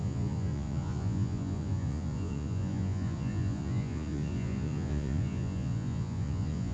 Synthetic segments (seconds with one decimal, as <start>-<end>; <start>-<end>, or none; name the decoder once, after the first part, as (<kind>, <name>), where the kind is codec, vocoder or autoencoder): 0.0-6.7 (vocoder, Vocos)